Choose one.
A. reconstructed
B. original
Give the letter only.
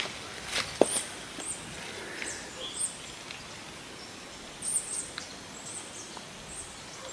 B